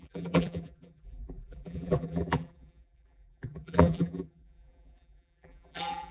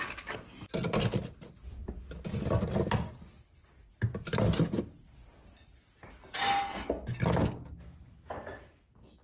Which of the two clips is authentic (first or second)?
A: second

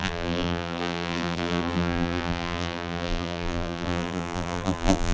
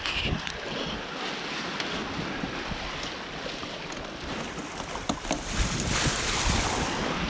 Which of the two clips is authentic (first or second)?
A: second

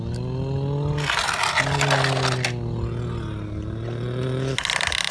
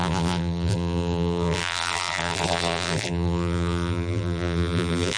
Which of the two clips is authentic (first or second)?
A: first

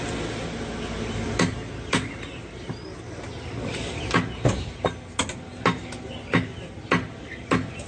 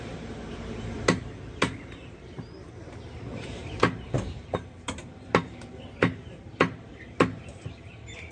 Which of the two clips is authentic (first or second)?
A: first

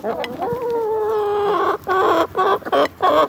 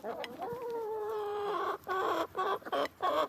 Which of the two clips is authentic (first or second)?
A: first